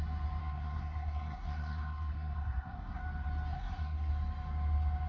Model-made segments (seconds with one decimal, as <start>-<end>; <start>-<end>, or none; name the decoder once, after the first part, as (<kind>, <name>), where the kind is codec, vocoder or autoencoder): 0.4-3.0 (codec, SNAC); 3.5-4.1